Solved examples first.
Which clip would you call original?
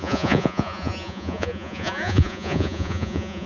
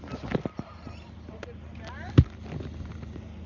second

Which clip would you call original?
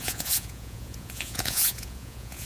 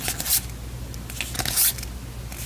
second